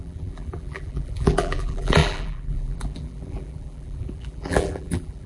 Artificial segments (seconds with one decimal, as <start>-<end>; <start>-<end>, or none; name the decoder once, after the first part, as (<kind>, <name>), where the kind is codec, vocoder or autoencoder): 0.0-5.3 (vocoder, BigVGAN v2)